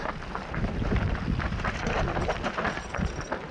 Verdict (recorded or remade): recorded